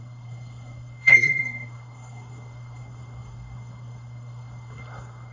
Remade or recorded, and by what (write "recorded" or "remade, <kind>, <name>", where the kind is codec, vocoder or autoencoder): remade, codec, SNAC